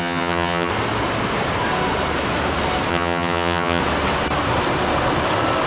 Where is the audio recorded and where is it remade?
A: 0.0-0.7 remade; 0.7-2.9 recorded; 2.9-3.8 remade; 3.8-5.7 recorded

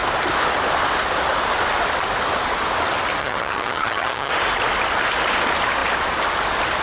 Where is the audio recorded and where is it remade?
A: 0.0-3.2 recorded; 3.2-4.3 remade; 4.3-6.8 recorded

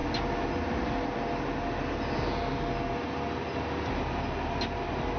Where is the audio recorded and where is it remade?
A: 0.0-5.2 recorded